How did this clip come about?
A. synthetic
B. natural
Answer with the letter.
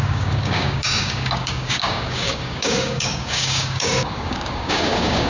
A